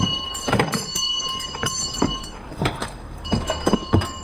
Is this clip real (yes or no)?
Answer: no